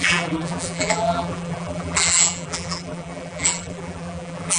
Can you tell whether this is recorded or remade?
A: remade